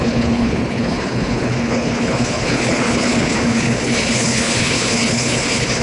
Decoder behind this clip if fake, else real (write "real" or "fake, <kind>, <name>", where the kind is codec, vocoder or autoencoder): fake, codec, HILCodec